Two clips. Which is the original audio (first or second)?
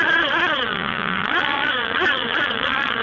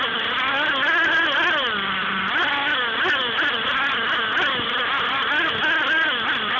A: second